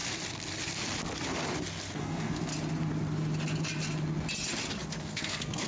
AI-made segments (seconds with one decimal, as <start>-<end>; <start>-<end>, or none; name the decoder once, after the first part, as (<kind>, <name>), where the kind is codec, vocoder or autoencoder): 2.0-2.5 (codec, SNAC); 4.9-5.7